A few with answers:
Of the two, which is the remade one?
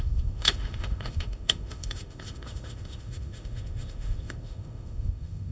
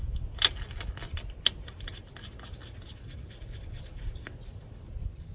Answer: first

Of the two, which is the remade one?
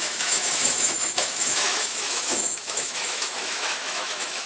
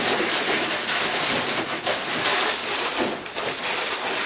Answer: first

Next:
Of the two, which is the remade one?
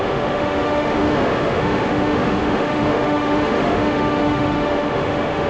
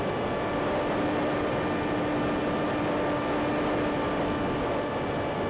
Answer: first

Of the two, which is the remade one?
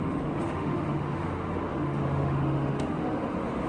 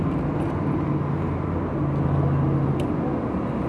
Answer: first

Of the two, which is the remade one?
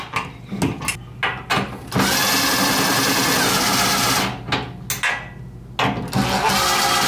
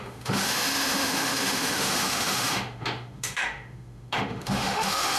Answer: second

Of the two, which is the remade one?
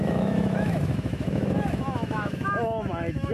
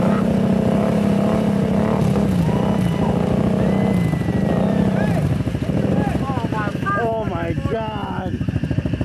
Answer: first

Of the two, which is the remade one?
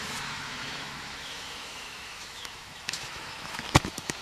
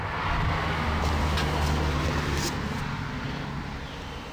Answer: first